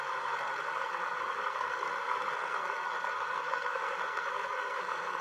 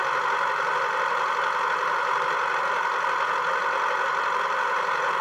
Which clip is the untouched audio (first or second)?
second